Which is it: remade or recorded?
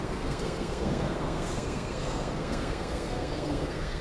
remade